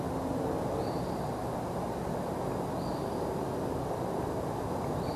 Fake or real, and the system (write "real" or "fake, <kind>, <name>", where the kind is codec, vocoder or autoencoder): real